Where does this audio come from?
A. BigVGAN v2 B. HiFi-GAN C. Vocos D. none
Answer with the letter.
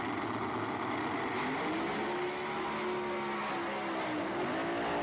D